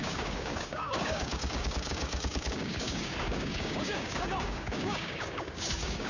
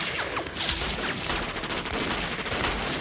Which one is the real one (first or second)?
second